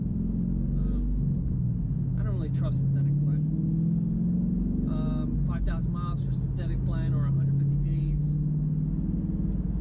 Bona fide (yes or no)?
yes